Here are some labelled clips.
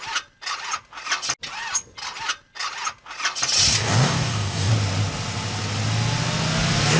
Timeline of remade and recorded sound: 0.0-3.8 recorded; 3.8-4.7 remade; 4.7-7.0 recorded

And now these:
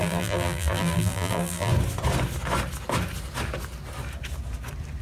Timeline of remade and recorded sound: 0.0-1.7 remade; 1.7-5.0 recorded

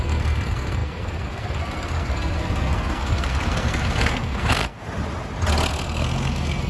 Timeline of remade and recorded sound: 0.0-4.8 remade; 4.8-5.7 recorded; 5.7-6.7 remade

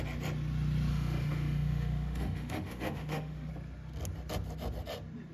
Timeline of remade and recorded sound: 0.0-0.9 recorded; 0.9-3.5 remade; 3.5-5.3 recorded

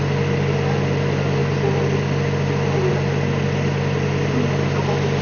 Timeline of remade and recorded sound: 0.0-5.2 recorded

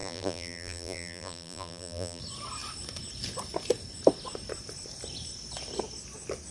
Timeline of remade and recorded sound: 0.0-2.2 remade; 2.2-6.5 recorded

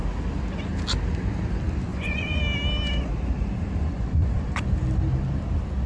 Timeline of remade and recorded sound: 0.0-1.9 recorded; 1.9-2.4 remade; 2.4-3.8 recorded; 3.8-4.5 remade; 4.5-5.9 recorded